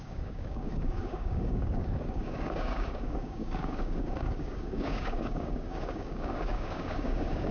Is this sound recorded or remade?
remade